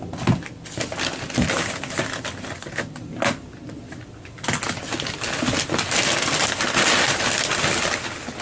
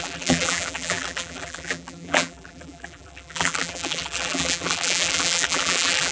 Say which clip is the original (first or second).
first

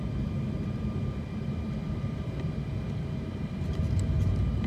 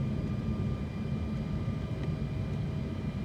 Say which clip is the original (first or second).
second